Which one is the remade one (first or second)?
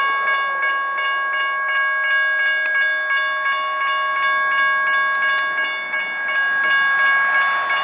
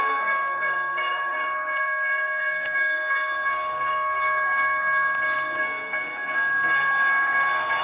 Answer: second